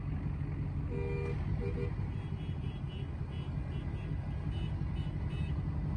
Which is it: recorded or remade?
recorded